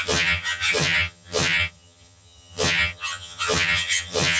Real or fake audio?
fake